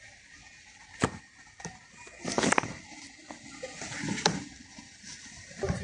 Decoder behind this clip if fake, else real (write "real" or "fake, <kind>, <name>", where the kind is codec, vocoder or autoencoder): real